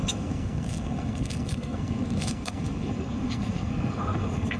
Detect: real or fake fake